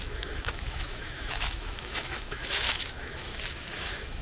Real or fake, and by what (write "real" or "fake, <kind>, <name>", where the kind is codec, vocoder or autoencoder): fake, autoencoder, DAC-VAE